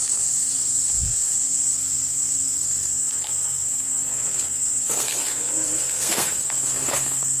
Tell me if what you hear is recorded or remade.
remade